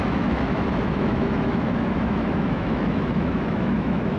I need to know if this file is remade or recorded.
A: remade